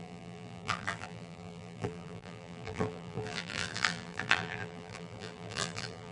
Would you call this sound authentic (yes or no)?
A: no